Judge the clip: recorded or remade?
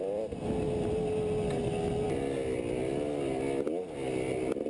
recorded